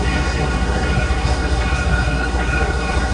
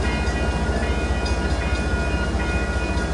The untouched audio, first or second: second